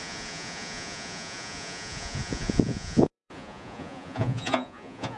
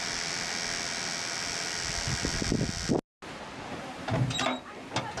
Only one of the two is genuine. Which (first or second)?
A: second